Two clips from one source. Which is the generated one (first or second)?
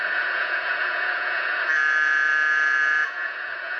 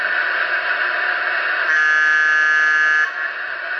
first